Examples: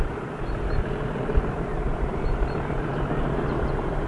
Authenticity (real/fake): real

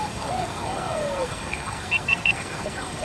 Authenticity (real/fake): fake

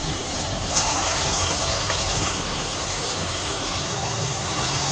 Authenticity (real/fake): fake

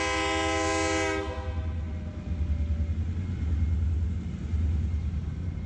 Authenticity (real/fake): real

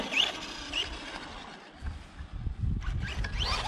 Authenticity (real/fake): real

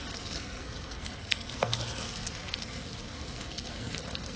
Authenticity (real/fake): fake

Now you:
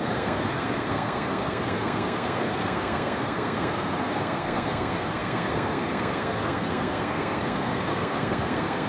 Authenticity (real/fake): fake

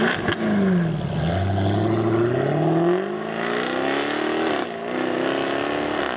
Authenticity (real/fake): real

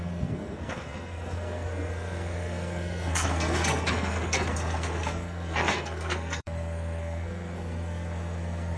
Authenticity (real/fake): fake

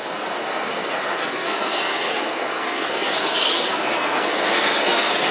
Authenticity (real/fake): fake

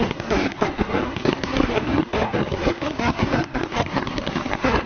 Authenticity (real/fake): fake